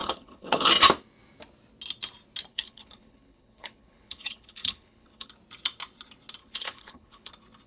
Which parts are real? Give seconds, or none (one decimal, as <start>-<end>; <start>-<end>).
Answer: 0.7-2.5; 5.3-6.4; 7.3-7.7